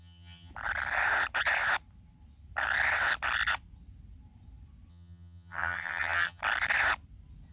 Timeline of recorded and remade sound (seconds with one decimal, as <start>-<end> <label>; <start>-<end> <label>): 0.0-0.5 remade; 0.5-4.9 recorded; 4.9-6.4 remade; 6.4-7.5 recorded